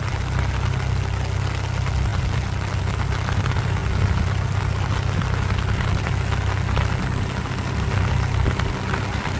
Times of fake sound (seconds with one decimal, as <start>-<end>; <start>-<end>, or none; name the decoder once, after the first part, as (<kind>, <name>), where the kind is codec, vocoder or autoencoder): none